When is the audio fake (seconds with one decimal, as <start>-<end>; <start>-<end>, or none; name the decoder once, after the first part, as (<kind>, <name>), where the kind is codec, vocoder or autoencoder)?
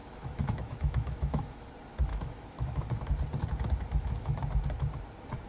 0.0-1.7 (autoencoder, DAC-VAE); 2.1-2.8; 3.9-4.4